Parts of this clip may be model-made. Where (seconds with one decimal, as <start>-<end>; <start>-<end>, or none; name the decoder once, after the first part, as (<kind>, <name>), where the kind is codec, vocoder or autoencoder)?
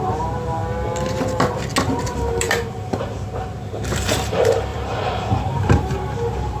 0.0-0.6 (vocoder, BigVGAN v2); 1.8-6.6